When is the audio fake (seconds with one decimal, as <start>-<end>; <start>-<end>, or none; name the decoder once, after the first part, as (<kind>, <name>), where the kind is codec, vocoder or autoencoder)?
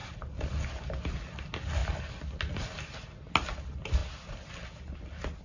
none